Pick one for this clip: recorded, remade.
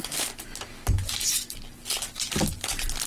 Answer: recorded